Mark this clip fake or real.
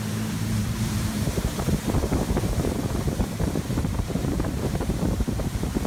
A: fake